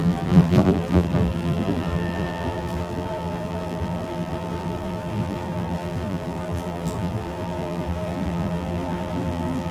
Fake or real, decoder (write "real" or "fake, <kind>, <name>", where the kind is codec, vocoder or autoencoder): fake, vocoder, BigVGAN v2